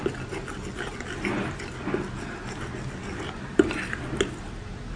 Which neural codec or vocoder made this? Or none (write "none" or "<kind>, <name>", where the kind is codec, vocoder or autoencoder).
none